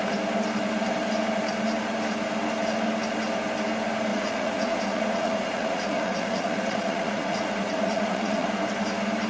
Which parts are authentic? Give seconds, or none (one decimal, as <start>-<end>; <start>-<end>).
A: 0.0-4.1; 8.6-9.3